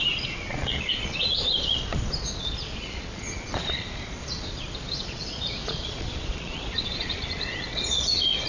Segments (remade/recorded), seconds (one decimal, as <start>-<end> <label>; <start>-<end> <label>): 0.0-8.5 remade